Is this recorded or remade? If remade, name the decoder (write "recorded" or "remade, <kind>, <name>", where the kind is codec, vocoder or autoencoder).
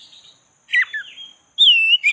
recorded